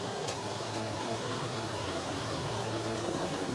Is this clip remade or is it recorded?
remade